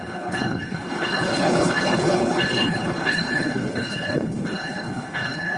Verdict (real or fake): fake